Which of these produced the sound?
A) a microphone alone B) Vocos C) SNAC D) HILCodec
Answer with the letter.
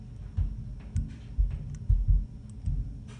A